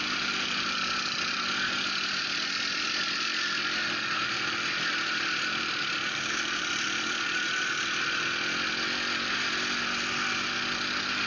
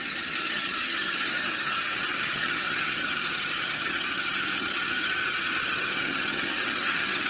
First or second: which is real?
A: first